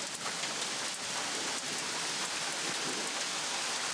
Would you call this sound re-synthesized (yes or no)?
no